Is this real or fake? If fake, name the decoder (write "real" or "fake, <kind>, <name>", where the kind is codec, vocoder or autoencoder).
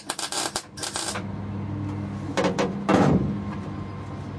real